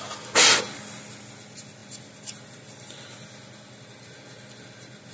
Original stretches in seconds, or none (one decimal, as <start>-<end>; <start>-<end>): 0.0-5.1